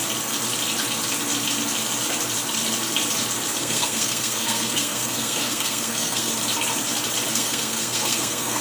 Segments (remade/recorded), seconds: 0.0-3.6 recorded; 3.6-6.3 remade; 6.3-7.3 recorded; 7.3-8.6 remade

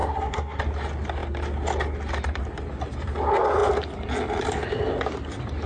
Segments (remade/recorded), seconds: 0.0-0.6 remade; 0.6-5.7 recorded